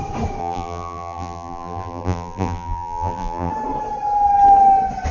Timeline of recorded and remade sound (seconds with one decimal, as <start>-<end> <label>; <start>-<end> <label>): 0.0-0.4 recorded; 0.4-3.5 remade; 3.5-5.1 recorded